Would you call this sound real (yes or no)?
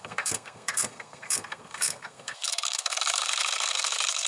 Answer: no